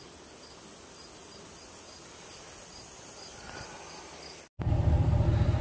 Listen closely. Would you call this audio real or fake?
real